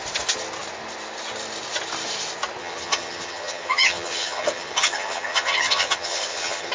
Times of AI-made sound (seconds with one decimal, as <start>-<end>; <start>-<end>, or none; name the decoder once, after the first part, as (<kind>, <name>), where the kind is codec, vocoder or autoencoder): 2.6-6.7 (vocoder, HiFi-GAN)